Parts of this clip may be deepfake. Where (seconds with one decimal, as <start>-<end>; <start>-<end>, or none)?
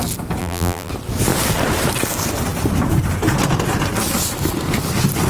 0.4-0.9